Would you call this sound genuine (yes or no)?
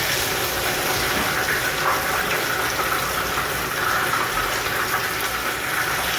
yes